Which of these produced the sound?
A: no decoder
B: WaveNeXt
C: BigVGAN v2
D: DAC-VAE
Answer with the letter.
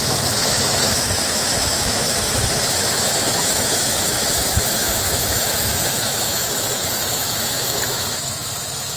D